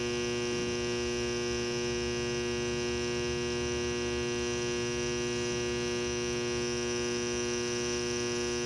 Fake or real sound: real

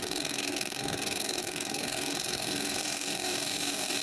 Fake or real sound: fake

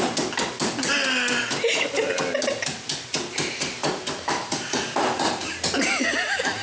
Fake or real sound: real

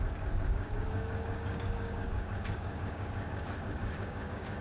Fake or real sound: fake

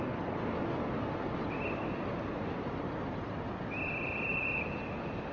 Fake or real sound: real